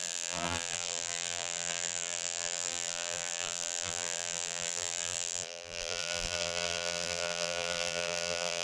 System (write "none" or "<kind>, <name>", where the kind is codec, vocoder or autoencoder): vocoder, BigVGAN v2